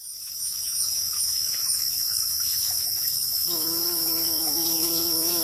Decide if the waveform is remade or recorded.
remade